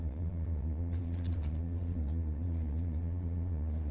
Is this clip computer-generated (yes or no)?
yes